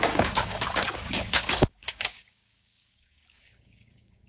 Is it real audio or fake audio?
fake